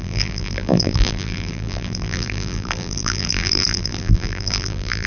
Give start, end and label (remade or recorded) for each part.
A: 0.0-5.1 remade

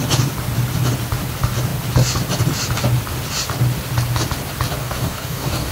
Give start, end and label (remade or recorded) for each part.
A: 0.0-4.8 recorded; 4.8-5.7 remade

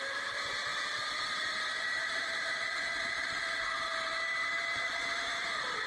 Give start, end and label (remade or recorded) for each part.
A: 0.0-5.9 recorded